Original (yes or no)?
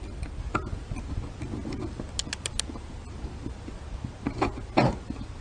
yes